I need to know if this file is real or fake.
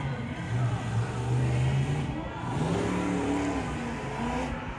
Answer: real